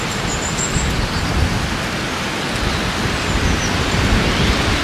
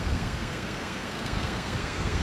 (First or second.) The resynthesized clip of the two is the second